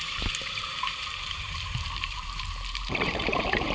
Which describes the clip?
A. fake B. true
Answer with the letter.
A